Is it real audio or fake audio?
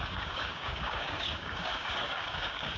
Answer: fake